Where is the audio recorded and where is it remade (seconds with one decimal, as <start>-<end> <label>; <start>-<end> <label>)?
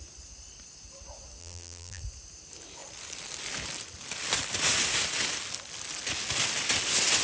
0.0-1.4 recorded; 1.4-2.0 remade; 2.0-7.2 recorded